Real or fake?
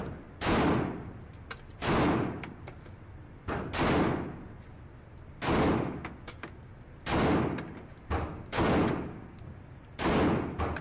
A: real